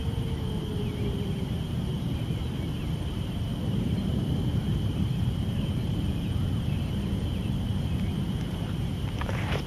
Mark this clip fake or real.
fake